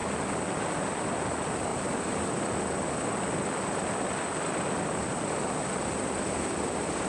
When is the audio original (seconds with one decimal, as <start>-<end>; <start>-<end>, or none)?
0.0-7.1